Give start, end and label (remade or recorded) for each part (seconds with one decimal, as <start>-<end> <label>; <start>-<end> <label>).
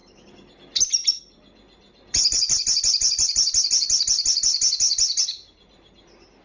0.0-6.4 recorded